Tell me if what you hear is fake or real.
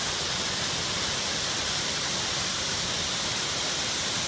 fake